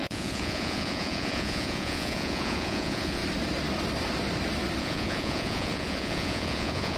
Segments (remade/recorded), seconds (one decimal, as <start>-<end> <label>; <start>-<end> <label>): 0.0-3.2 remade; 3.2-4.8 recorded; 4.8-7.0 remade